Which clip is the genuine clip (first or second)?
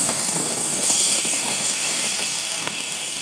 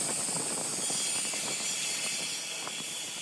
second